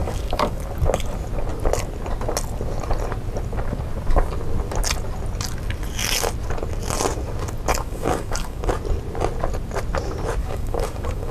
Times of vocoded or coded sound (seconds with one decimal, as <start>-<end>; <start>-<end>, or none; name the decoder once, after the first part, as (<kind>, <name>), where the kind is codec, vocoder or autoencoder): 0.0-0.6 (codec, DAC); 7.7-8.7; 10.4-11.3